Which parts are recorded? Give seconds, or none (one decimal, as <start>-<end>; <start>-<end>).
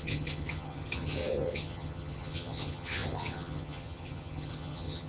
none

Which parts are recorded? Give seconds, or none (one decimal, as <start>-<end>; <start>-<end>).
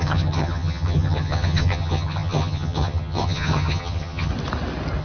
4.3-5.0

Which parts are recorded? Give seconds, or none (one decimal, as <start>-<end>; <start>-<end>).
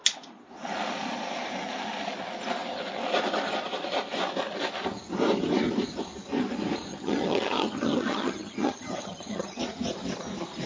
0.0-6.9; 9.6-10.7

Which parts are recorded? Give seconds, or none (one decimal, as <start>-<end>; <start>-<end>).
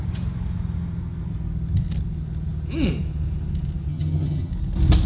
0.0-3.9; 4.5-5.1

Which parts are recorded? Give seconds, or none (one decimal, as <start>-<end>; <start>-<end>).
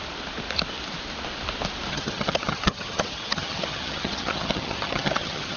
0.0-1.9